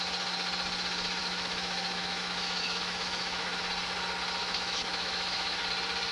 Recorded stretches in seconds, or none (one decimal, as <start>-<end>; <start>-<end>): 0.0-1.2; 3.6-4.4; 5.6-6.1